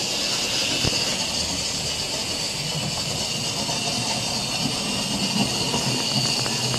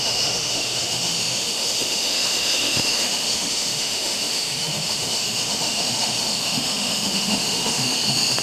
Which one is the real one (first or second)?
first